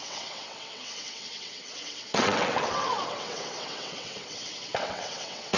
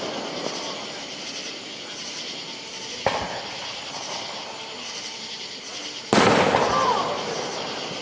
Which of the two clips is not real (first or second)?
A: first